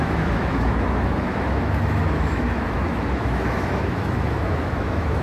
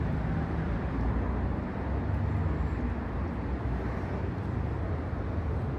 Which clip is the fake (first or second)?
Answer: first